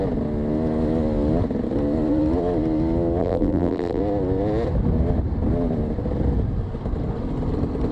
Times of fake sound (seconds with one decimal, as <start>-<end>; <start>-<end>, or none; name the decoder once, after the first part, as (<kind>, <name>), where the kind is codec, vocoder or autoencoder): 3.2-4.0 (vocoder, BigVGAN v2)